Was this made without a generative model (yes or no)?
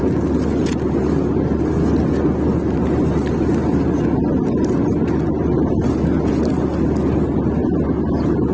yes